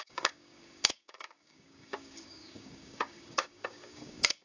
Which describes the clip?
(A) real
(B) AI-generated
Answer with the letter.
B